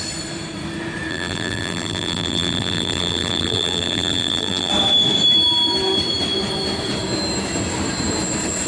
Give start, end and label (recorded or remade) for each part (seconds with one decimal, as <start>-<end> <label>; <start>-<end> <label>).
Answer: 0.0-1.1 recorded; 1.1-4.7 remade; 4.7-8.7 recorded